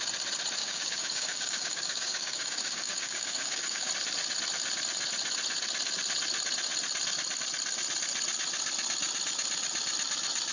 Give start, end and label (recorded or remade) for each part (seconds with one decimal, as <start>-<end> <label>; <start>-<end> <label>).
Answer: 0.0-0.6 recorded; 0.6-3.9 remade; 3.9-10.5 recorded